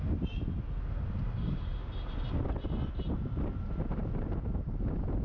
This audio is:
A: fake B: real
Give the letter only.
B